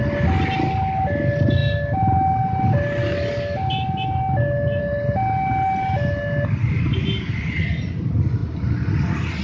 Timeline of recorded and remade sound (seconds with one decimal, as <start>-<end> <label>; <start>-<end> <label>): 0.0-9.4 recorded